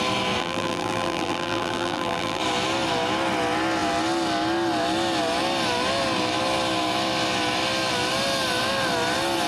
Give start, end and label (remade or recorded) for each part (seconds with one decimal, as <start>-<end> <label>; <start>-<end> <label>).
0.0-0.4 recorded; 0.4-2.4 remade; 2.4-9.5 recorded